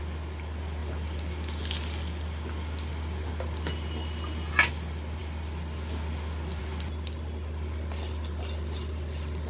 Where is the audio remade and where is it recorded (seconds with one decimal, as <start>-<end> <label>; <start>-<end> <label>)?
0.0-9.5 recorded